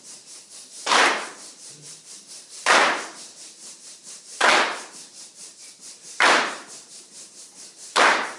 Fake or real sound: fake